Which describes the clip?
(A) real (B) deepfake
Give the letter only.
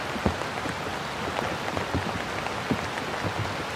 A